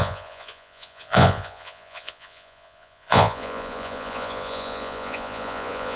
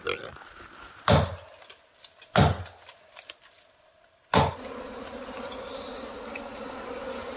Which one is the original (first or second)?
second